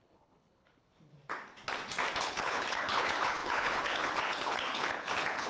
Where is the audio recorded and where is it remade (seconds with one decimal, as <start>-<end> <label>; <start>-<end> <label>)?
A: 0.0-1.1 remade; 1.1-2.2 recorded; 2.2-5.5 remade

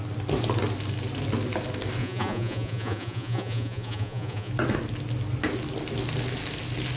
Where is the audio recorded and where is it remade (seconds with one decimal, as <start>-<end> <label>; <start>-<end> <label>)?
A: 0.0-2.0 recorded; 2.0-4.5 remade; 4.5-7.0 recorded

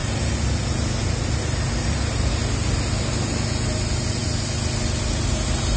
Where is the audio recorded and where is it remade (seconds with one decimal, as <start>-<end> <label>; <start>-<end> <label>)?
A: 0.0-5.8 recorded

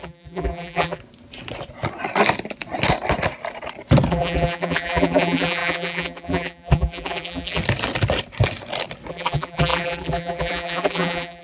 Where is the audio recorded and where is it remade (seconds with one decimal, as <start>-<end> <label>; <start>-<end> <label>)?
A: 0.0-1.0 remade; 1.0-4.1 recorded; 4.1-7.6 remade; 7.6-9.1 recorded; 9.1-11.4 remade